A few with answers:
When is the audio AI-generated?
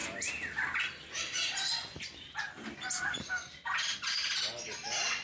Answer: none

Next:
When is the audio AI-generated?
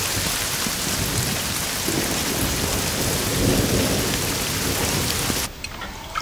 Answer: 3.3-6.2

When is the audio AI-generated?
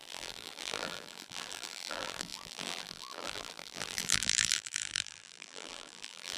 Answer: 0.0-6.4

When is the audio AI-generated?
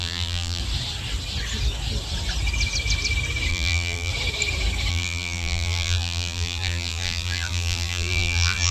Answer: 0.0-0.6; 3.5-4.1; 4.9-8.7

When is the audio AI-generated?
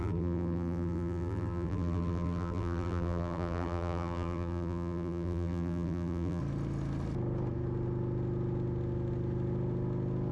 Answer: 0.0-6.4